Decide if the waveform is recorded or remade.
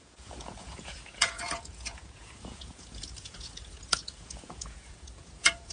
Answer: remade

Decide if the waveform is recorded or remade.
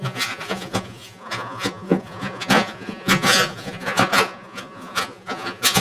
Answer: remade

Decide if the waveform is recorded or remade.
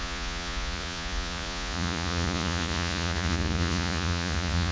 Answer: remade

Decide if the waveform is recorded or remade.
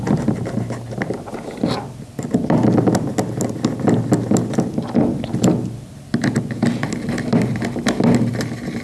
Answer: recorded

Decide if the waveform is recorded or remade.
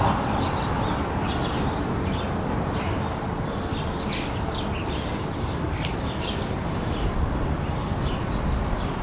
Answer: recorded